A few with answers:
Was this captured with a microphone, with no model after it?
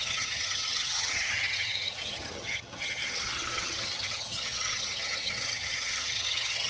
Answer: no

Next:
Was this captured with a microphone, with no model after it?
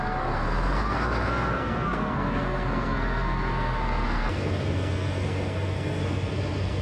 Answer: no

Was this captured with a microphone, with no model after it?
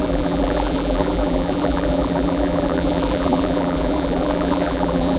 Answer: no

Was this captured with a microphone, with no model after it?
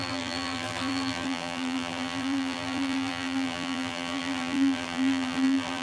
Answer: no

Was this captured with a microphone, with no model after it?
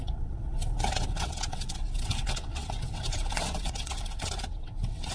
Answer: no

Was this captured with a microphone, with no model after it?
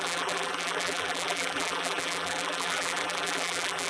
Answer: no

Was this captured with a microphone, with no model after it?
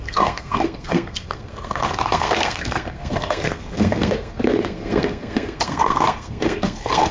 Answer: no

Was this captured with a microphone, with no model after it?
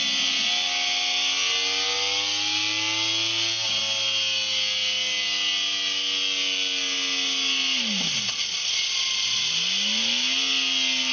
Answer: yes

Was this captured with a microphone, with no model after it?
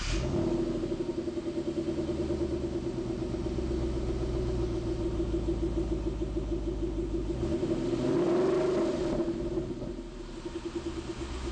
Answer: yes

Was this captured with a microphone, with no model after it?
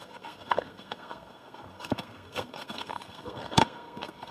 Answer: no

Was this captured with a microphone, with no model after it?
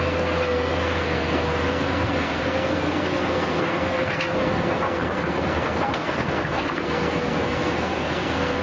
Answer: no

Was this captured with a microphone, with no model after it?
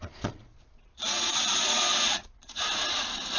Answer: no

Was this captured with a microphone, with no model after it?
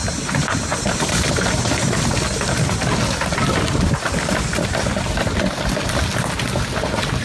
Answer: yes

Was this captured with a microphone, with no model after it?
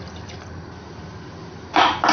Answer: yes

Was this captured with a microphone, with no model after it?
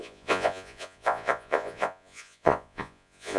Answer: no